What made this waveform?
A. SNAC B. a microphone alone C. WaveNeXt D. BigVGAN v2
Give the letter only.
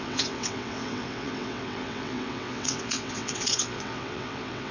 C